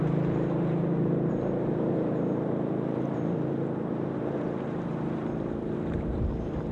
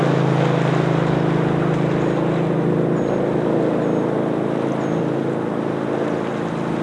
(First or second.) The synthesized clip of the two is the first